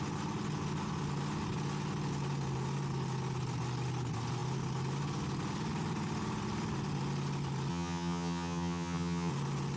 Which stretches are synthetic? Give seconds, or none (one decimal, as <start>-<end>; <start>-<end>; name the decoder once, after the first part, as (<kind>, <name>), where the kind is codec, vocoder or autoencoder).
7.7-9.3 (vocoder, HiFi-GAN)

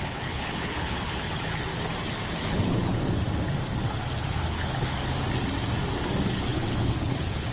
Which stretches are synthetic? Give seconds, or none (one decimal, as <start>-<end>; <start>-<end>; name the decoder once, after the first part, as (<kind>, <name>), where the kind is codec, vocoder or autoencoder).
0.0-1.7 (codec, HILCodec); 2.4-3.0; 4.2-5.0; 6.4-7.5

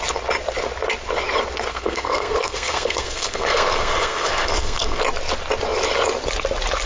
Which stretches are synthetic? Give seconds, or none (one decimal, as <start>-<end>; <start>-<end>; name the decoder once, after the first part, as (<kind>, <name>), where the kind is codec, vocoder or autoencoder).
1.7-5.0 (codec, SNAC)